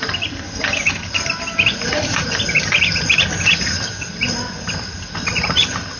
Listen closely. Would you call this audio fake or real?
real